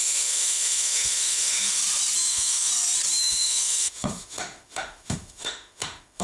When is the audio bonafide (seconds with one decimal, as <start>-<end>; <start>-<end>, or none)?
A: 1.8-2.3; 2.7-3.2